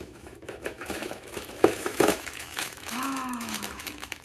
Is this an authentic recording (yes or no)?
no